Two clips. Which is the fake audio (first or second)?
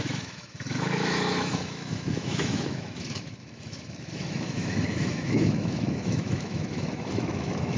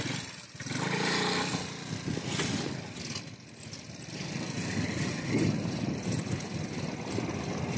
first